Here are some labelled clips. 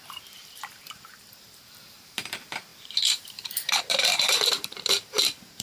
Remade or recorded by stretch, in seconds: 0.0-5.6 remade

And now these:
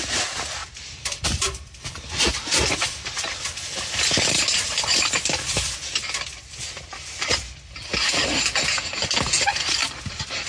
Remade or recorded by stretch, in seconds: 0.0-0.6 recorded; 0.6-5.7 remade; 5.7-9.8 recorded; 9.8-10.5 remade

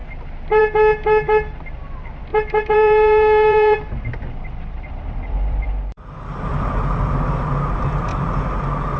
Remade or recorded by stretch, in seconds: 0.0-2.3 recorded; 2.3-7.1 remade; 7.1-9.0 recorded